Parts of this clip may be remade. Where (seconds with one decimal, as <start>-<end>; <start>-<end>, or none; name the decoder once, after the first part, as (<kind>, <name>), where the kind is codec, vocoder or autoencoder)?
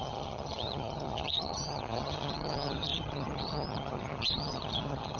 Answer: 0.0-5.2 (vocoder, HiFi-GAN)